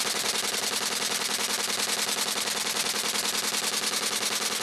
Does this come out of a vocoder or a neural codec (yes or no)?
no